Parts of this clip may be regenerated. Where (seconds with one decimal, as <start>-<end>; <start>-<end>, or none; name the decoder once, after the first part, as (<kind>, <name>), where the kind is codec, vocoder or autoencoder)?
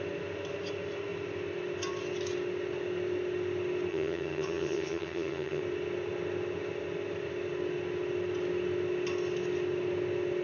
3.9-5.6 (vocoder, HiFi-GAN)